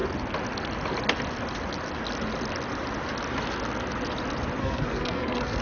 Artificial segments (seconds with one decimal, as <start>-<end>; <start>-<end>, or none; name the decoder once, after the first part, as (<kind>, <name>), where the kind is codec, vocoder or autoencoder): 4.6-5.6 (codec, SNAC)